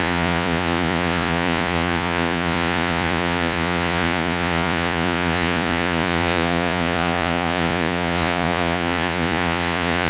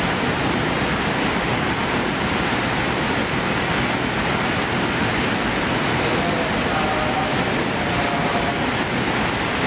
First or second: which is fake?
first